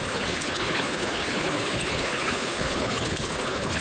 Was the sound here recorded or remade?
remade